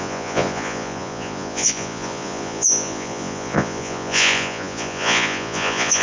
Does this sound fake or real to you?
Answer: fake